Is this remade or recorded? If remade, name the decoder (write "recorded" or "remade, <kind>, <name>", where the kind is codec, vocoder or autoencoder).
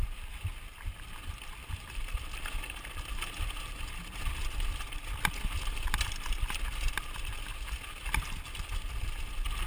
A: remade, vocoder, BigVGAN v2